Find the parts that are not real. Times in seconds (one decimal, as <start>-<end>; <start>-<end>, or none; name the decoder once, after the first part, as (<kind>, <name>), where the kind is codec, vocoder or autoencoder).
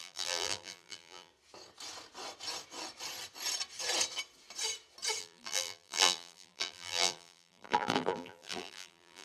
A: 0.0-1.3 (vocoder, BigVGAN v2); 5.2-9.2